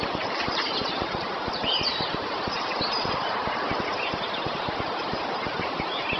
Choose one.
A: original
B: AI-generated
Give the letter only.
A